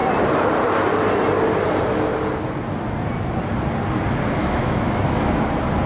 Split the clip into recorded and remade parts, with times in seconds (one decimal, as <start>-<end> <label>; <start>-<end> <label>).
0.0-4.4 recorded; 4.4-5.0 remade; 5.0-5.9 recorded